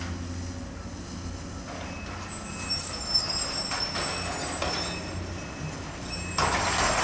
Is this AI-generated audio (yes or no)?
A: no